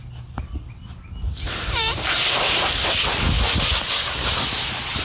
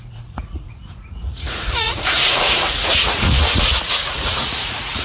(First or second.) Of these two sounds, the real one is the first